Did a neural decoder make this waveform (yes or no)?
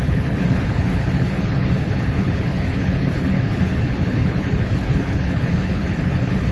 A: yes